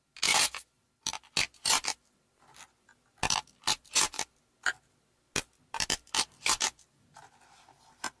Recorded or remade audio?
recorded